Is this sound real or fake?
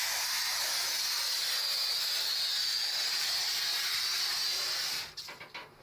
real